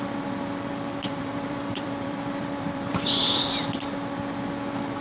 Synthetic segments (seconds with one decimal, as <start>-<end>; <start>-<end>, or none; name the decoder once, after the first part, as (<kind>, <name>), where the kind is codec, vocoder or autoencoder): 1.1-3.8 (vocoder, BigVGAN v2)